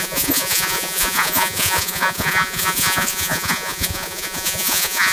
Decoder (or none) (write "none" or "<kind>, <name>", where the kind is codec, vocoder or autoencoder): vocoder, Vocos